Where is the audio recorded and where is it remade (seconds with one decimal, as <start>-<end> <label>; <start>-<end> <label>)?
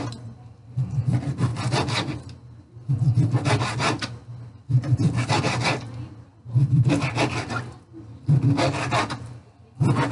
0.0-10.1 recorded